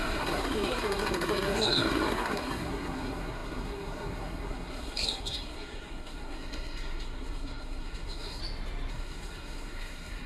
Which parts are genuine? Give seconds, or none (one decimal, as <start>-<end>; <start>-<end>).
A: 8.4-8.9